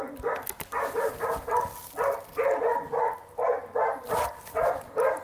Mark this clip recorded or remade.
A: recorded